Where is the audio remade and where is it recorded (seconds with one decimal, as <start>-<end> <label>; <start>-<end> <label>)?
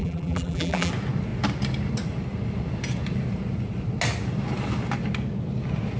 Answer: 0.0-0.9 remade; 0.9-6.0 recorded